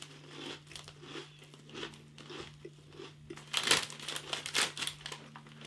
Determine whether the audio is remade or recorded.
recorded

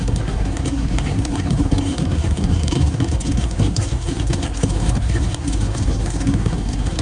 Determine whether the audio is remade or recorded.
remade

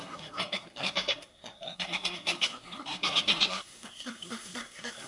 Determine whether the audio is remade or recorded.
remade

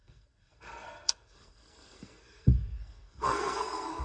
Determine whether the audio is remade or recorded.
remade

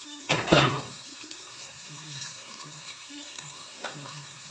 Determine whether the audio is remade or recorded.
remade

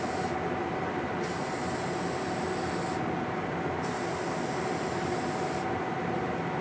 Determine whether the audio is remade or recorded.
recorded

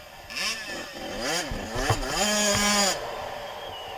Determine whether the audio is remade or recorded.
recorded